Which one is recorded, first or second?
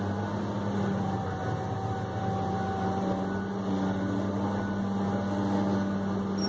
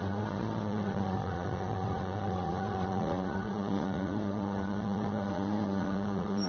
first